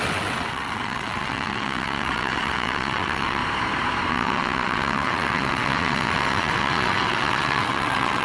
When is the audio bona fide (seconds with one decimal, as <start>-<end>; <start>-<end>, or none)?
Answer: 3.4-4.1

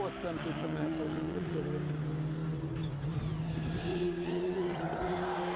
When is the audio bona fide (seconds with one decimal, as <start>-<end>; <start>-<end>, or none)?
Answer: 0.0-0.6; 1.6-3.9; 4.8-5.6

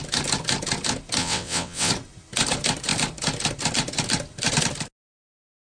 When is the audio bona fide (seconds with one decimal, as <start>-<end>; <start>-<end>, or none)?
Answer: 0.0-1.2; 1.9-5.7